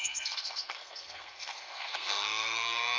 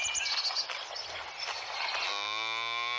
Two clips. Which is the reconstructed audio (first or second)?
first